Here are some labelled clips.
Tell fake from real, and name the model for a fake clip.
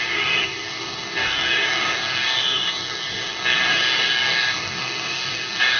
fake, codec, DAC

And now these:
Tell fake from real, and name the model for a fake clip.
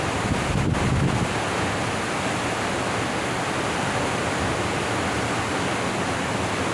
real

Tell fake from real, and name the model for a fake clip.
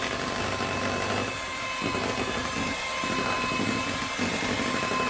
real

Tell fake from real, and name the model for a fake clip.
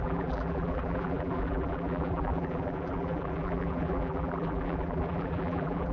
fake, vocoder, BigVGAN v2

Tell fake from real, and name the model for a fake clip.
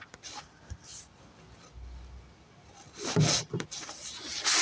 real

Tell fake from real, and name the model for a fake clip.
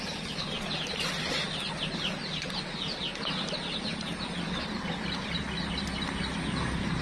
real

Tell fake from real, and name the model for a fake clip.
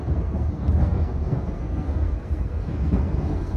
fake, codec, SNAC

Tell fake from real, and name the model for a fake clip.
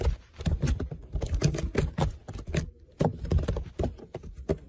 real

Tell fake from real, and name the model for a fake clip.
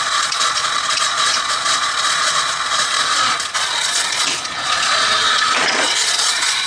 fake, vocoder, Vocos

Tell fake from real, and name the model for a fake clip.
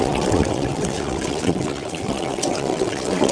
fake, vocoder, WaveNeXt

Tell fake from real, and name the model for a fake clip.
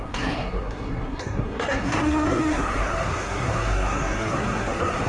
fake, codec, SNAC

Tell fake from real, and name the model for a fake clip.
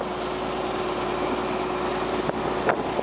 real